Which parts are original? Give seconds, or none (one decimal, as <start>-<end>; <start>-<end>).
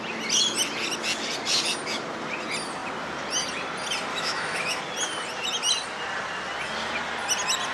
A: 0.0-4.1; 4.8-7.7